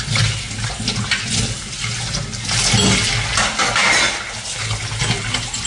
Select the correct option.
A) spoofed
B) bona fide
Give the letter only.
B